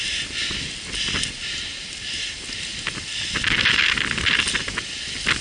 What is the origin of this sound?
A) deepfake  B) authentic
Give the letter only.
B